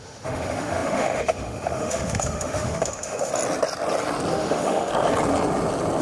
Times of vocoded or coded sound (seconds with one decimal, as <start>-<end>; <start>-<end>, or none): 0.0-3.3; 4.3-4.9